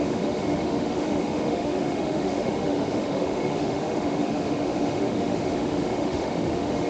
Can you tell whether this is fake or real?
fake